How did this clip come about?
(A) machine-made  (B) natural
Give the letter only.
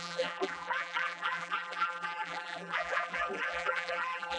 A